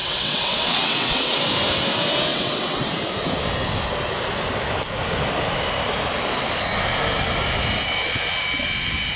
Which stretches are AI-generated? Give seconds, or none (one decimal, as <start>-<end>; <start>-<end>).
0.0-1.4; 2.3-2.9